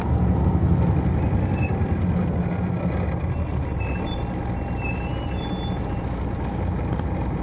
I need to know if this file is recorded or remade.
recorded